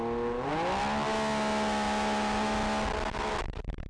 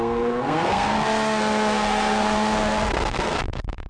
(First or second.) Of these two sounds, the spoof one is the second